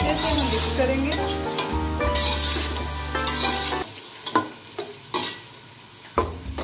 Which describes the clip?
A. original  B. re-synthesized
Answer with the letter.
A